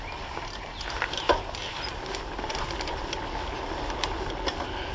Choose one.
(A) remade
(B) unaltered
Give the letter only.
B